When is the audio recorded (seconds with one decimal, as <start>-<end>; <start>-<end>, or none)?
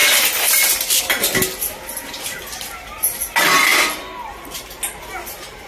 0.0-5.7